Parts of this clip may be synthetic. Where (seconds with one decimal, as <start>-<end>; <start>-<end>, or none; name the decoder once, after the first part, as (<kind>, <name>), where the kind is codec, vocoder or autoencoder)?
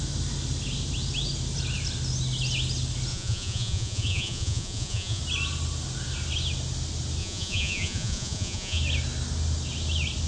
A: 3.1-5.2 (vocoder, Vocos); 7.2-8.8